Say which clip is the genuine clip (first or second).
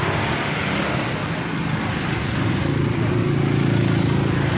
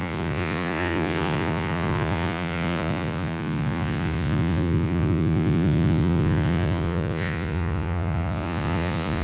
first